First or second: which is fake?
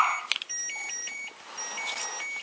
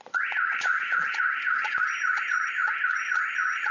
second